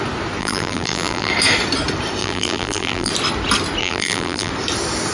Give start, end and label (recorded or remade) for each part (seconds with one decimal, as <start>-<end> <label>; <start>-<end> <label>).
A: 0.0-0.4 recorded; 0.4-1.3 remade; 1.3-2.2 recorded; 2.2-3.1 remade; 3.1-3.8 recorded; 3.8-4.5 remade; 4.5-5.1 recorded